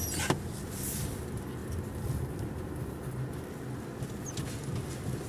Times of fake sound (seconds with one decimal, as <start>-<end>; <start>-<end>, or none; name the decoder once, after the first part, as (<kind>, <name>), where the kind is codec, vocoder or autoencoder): none